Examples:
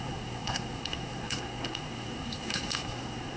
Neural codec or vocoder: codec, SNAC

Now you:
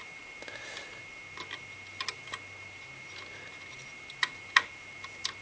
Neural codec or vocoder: none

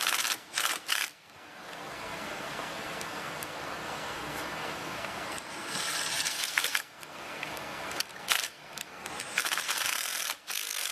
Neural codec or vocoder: codec, SNAC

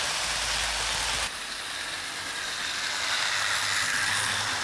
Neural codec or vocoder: none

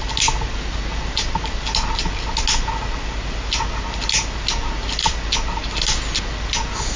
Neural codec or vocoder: none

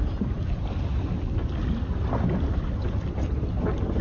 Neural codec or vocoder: none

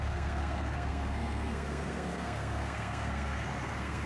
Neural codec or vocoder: codec, SNAC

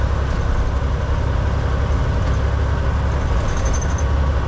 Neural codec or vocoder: none